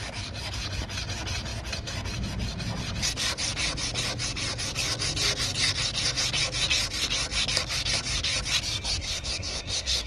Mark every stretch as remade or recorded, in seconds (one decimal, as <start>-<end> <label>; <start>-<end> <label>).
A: 0.0-9.0 recorded; 9.0-10.1 remade